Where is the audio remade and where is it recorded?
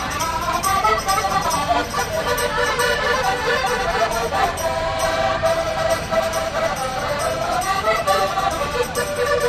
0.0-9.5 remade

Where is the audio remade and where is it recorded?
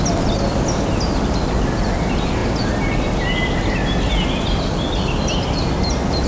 0.0-6.3 recorded